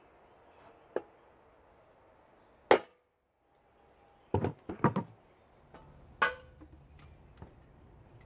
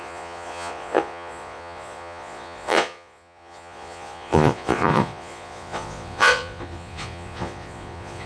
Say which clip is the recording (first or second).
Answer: first